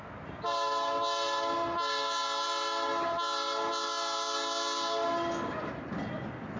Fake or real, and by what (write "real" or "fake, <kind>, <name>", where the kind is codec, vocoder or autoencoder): real